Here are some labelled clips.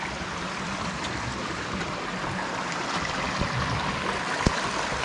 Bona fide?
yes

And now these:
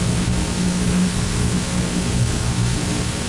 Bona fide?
no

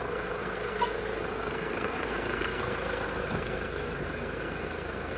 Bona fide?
no